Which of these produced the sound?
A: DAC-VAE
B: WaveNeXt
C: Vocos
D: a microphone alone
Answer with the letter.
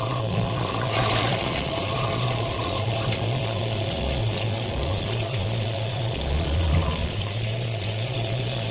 C